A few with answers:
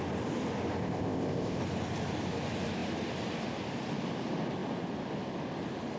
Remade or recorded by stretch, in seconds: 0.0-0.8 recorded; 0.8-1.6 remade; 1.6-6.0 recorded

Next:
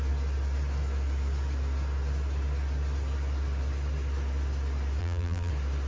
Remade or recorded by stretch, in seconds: 0.0-5.0 recorded; 5.0-5.5 remade; 5.5-5.9 recorded

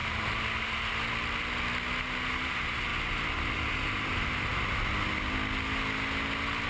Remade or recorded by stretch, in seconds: 0.0-6.7 recorded

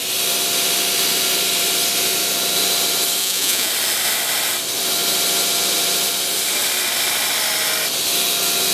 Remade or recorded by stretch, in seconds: 0.0-3.2 recorded; 3.2-3.7 remade; 3.7-8.7 recorded

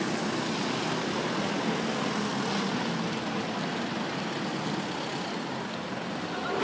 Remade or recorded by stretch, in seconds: 0.0-6.6 recorded

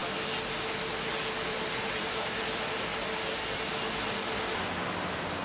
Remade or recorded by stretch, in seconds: 0.0-1.5 recorded; 1.5-2.0 remade; 2.0-5.4 recorded

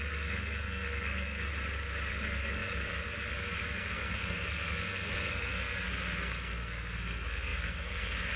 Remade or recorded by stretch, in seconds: 0.0-1.5 remade; 1.5-2.1 recorded; 2.1-8.4 remade